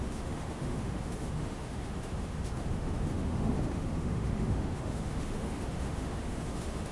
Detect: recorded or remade remade